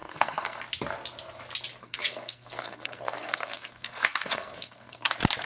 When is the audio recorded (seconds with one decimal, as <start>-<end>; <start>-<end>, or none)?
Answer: 0.6-1.8; 5.1-5.5